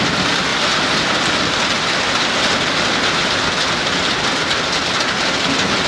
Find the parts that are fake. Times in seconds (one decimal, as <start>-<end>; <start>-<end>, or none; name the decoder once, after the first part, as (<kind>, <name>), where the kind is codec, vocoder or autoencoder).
0.5-1.3 (vocoder, BigVGAN v2)